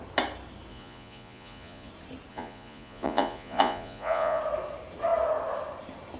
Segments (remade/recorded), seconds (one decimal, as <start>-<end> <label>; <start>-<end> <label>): 0.0-0.7 recorded; 0.7-1.9 remade; 1.9-2.3 recorded; 2.3-4.4 remade; 4.4-6.2 recorded